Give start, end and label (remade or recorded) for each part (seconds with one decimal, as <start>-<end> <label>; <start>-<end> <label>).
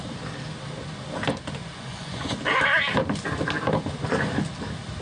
0.0-1.6 recorded; 1.6-2.4 remade; 2.4-5.0 recorded